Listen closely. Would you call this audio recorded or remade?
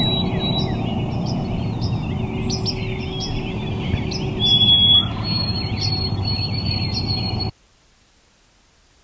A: recorded